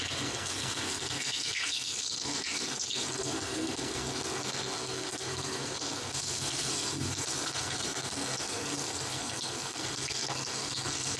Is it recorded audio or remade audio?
remade